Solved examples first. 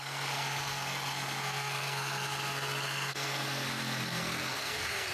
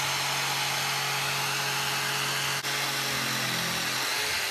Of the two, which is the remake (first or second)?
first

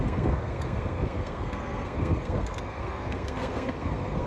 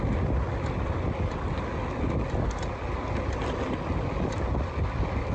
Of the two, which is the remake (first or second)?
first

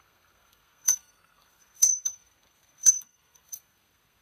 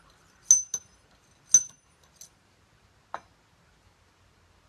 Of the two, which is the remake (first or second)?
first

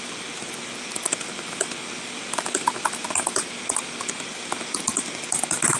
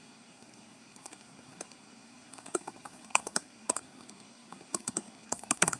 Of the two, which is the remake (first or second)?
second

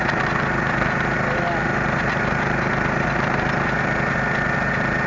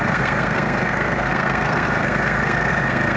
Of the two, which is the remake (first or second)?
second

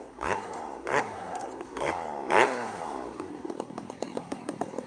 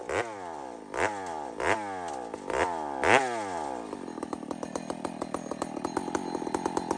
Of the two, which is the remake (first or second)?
first